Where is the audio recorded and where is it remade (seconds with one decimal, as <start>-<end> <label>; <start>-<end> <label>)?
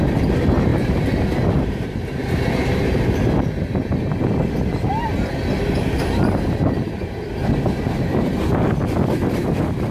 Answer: 0.0-0.7 recorded; 0.7-3.3 remade; 3.3-9.9 recorded